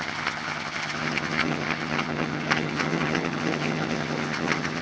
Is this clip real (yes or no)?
no